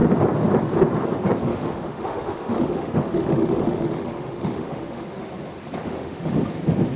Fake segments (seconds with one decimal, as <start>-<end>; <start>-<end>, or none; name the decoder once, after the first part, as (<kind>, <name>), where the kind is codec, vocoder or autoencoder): 1.5-5.3 (autoencoder, DAC-VAE); 5.8-6.3